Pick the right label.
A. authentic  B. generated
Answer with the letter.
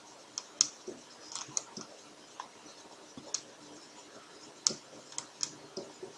A